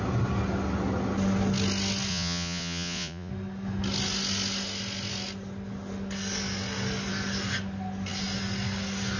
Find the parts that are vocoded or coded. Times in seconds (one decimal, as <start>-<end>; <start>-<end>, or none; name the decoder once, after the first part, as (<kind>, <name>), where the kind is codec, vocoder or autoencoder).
2.1-3.3 (vocoder, Vocos)

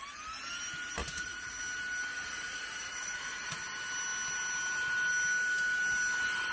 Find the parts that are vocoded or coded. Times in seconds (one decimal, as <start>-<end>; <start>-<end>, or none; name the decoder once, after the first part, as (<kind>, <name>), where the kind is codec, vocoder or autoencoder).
1.0-1.6 (vocoder, Vocos); 2.1-3.6

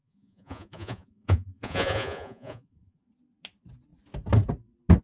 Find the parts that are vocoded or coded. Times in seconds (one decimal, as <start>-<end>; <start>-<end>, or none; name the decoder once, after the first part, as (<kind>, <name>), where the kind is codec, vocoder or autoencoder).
0.0-3.0 (vocoder, Vocos)

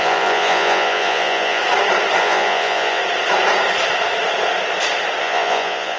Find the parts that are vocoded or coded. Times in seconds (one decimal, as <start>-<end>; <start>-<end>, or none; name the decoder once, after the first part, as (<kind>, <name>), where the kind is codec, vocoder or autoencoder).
0.0-1.6 (vocoder, Vocos); 2.2-3.0; 5.2-6.0

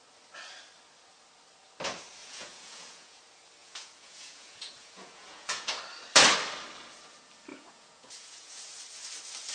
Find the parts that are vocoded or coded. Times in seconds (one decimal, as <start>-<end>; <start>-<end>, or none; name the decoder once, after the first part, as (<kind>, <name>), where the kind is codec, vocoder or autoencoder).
2.2-3.2 (vocoder, Vocos); 3.6-5.7; 7.5-8.6

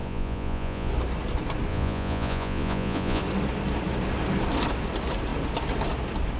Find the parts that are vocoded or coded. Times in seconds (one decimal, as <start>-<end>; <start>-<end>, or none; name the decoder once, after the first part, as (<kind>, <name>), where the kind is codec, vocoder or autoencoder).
0.0-0.9 (vocoder, Vocos); 1.7-3.2

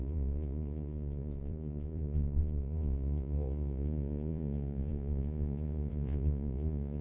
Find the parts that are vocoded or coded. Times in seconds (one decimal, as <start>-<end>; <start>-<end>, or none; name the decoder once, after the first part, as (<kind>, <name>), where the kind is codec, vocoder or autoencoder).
0.0-7.0 (vocoder, Vocos)